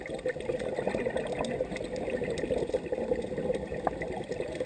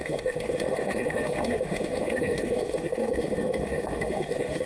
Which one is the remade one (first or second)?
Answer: second